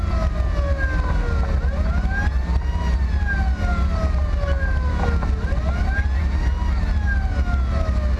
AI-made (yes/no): no